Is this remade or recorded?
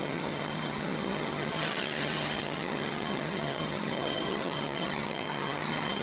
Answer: remade